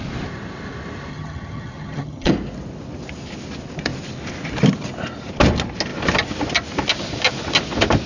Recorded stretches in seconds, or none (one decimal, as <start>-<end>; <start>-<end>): 0.0-1.1; 2.3-8.1